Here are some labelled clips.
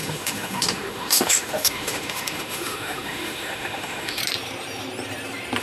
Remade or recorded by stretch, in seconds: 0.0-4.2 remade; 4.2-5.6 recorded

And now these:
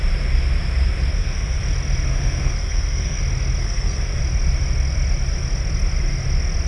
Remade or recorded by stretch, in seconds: 0.0-1.1 recorded; 1.1-1.6 remade; 1.6-2.1 recorded; 2.1-3.2 remade; 3.2-3.6 recorded; 3.6-4.2 remade; 4.2-6.7 recorded

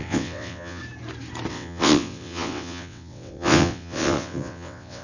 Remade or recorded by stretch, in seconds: 0.0-0.8 remade; 0.8-1.5 recorded; 1.5-5.0 remade

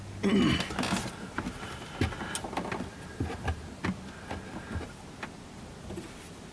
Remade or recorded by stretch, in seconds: 0.0-6.5 recorded

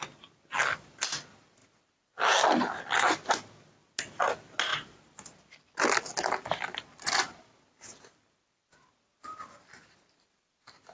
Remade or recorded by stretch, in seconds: 0.0-10.9 recorded

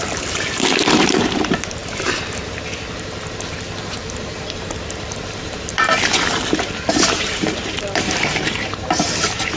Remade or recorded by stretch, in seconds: 0.0-9.6 remade